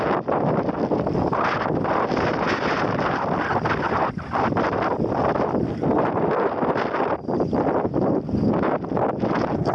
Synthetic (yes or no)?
no